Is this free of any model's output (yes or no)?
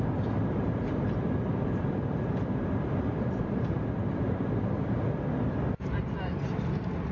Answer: yes